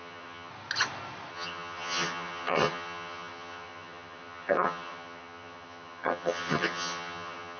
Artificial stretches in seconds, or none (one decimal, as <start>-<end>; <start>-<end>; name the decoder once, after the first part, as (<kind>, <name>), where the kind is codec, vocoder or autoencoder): 0.0-0.5 (vocoder, HiFi-GAN); 1.3-7.6